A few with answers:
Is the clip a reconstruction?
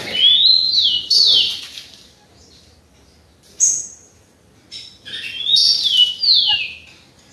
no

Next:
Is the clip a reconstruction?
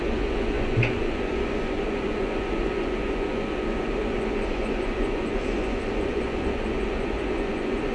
yes